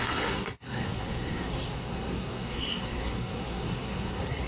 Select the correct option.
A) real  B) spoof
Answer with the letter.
B